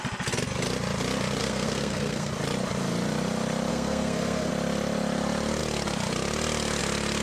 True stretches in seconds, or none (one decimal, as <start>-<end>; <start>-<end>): 0.0-1.4; 2.3-3.7; 4.5-7.2